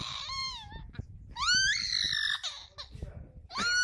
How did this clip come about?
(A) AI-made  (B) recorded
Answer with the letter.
B